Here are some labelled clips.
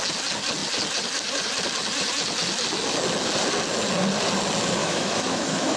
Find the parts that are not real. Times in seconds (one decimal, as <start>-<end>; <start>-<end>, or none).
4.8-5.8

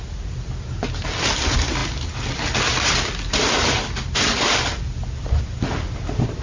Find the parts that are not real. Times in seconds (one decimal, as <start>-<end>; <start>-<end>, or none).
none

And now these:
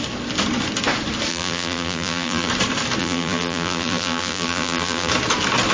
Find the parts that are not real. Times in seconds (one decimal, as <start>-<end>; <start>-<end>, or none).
1.3-2.5; 3.0-5.1